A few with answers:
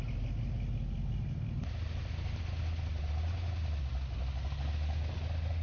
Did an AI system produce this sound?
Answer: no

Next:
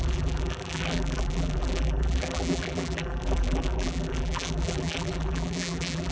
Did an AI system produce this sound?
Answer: yes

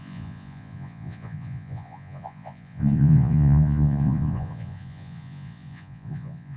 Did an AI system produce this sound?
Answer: yes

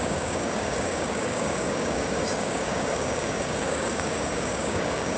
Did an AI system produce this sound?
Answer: yes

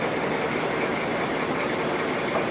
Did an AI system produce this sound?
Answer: no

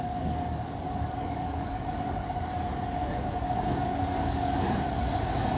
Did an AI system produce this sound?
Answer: yes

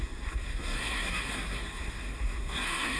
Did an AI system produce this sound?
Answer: yes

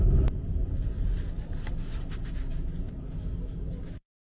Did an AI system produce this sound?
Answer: no